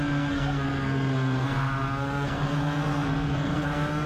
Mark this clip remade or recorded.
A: remade